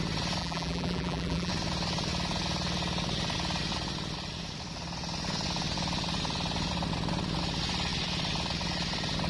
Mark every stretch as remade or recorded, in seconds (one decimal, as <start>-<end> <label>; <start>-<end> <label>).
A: 0.0-0.4 recorded; 0.4-1.5 remade; 1.5-9.3 recorded